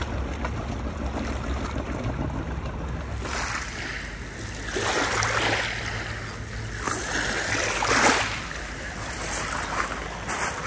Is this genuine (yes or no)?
yes